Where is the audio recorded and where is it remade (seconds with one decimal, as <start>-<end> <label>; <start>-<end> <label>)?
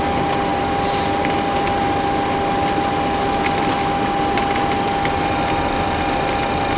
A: 0.0-6.8 recorded